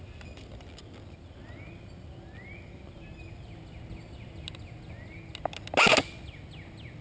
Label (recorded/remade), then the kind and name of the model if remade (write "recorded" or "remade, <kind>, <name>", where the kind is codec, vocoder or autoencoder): recorded